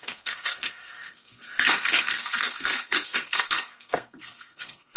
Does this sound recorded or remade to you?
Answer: remade